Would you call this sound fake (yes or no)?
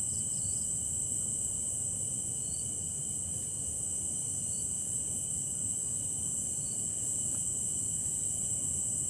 no